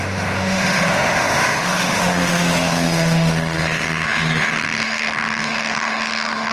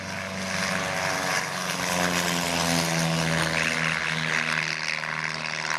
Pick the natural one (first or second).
second